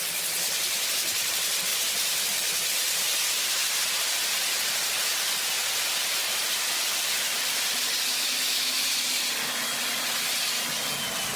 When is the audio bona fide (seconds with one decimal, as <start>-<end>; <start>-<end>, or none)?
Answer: 0.0-8.1; 8.8-11.4